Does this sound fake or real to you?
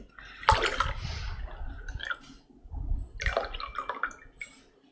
real